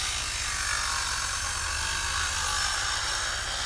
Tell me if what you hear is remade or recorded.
recorded